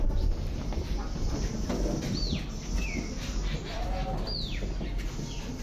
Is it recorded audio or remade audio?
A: recorded